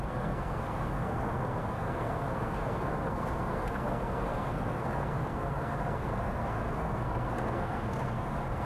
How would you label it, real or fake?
fake